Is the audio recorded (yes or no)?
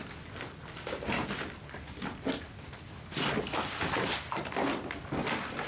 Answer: yes